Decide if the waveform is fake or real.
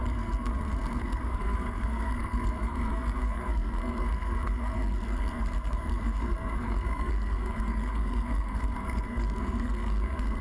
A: fake